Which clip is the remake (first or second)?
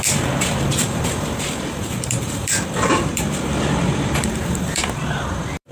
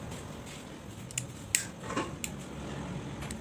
first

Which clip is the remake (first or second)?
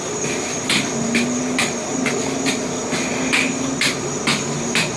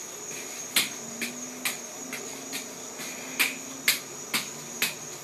first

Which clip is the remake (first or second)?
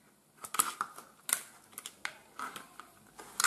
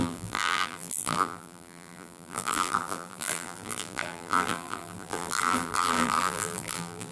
second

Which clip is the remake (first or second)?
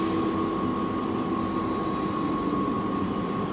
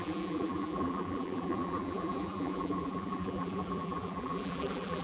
second